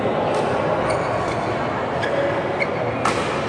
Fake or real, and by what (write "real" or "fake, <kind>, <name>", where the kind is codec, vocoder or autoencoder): real